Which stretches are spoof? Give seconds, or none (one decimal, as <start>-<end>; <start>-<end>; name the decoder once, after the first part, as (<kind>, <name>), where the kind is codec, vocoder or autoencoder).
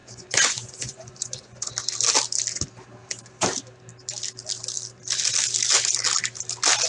0.0-1.7 (vocoder, Vocos)